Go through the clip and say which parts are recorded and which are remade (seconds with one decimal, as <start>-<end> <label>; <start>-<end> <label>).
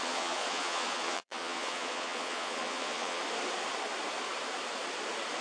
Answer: 0.0-3.2 remade; 3.2-5.4 recorded